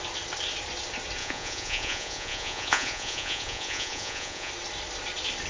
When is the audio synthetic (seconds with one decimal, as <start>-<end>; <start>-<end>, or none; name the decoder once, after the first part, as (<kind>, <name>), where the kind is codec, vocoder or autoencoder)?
1.2-4.5 (vocoder, Vocos)